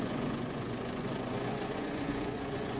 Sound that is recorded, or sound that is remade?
remade